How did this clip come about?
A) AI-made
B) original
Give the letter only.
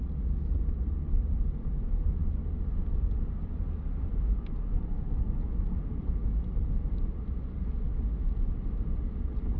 B